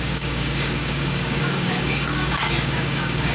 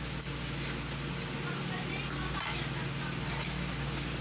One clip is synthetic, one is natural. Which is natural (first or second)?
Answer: second